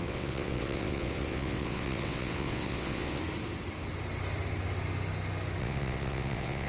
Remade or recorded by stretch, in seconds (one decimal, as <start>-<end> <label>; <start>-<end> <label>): 0.0-3.2 remade; 3.2-5.6 recorded; 5.6-6.7 remade